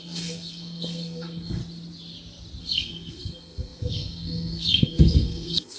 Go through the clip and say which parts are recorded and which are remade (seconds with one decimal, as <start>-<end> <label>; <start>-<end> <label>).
0.0-1.6 remade; 1.6-2.6 recorded; 2.6-5.8 remade